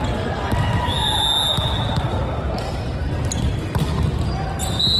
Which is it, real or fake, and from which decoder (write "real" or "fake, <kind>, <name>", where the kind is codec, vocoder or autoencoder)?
real